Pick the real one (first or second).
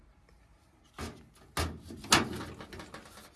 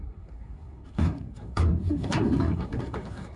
first